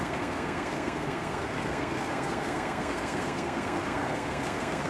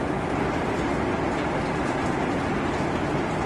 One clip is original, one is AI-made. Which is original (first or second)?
second